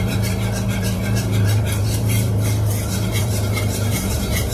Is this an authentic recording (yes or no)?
no